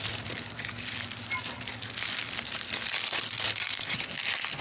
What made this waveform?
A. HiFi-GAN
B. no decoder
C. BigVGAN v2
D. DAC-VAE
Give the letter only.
C